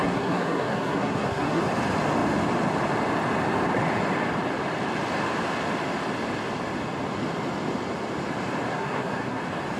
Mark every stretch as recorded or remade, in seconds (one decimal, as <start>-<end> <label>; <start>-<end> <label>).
0.0-1.6 remade; 1.6-8.7 recorded; 8.7-9.4 remade; 9.4-9.8 recorded